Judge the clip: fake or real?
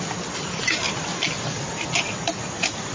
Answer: real